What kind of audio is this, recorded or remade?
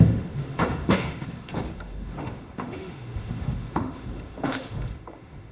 remade